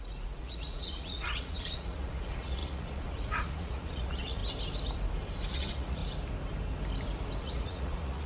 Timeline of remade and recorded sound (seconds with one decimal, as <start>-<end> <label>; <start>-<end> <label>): 0.0-4.4 remade; 4.4-5.5 recorded; 5.5-6.0 remade; 6.0-7.4 recorded; 7.4-8.3 remade